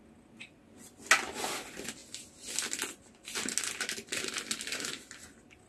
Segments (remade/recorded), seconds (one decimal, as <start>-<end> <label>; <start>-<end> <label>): 0.0-5.7 recorded